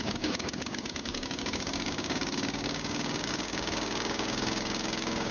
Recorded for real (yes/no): no